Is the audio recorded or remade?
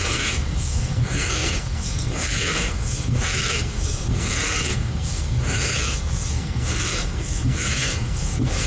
remade